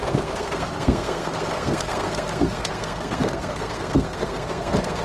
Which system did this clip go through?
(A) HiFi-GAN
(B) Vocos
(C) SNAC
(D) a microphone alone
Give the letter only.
C